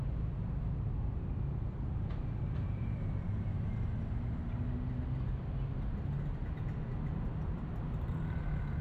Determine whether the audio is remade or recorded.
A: recorded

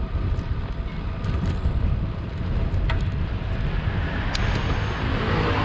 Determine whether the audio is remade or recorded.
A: recorded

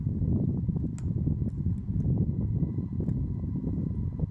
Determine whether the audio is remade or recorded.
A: recorded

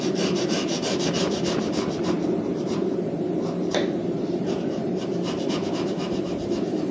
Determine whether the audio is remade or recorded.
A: remade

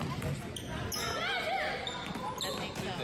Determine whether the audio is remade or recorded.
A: recorded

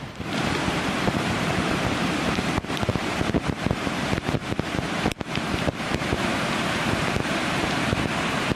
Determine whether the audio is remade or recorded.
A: remade